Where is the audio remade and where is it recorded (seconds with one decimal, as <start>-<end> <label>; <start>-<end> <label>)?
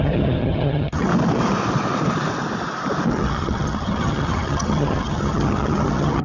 0.0-1.1 remade; 1.1-3.1 recorded; 3.1-6.2 remade